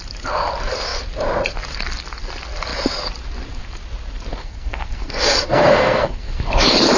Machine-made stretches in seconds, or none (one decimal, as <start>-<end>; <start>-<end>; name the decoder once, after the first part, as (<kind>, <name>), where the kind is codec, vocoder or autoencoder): 4.4-6.4 (codec, SNAC)